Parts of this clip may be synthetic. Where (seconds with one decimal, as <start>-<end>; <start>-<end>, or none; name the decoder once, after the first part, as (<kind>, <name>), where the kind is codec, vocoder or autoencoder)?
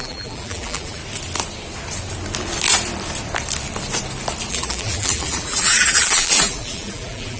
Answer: 0.0-1.0 (vocoder, BigVGAN v2); 4.5-7.4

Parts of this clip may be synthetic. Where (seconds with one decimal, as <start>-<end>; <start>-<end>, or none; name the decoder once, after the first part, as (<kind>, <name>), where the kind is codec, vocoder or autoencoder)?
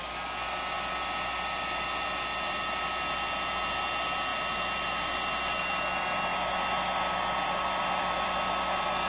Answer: none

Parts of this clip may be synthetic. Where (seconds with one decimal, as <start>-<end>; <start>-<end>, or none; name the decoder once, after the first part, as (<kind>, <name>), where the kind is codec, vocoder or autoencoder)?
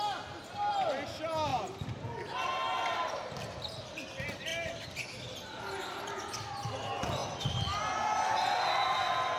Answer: none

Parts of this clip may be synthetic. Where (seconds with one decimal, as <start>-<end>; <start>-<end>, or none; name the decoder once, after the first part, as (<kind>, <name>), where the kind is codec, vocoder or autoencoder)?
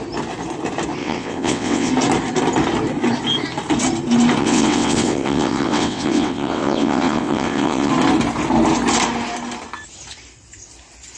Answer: 1.0-1.9 (vocoder, WaveNeXt); 4.4-7.9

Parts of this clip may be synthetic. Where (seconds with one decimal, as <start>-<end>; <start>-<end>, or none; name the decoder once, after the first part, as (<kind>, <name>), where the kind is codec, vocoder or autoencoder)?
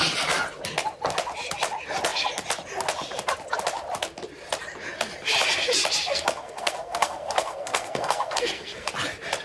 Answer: 6.1-8.9 (codec, SNAC)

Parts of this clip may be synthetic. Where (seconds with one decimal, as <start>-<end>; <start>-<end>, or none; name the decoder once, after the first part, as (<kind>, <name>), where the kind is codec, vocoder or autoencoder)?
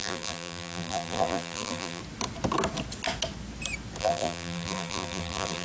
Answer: 0.0-2.0 (vocoder, BigVGAN v2); 4.0-5.6